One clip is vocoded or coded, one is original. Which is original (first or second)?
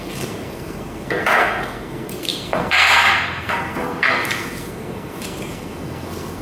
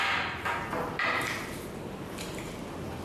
second